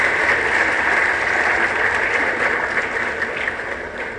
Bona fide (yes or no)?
yes